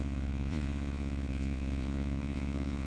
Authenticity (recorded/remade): remade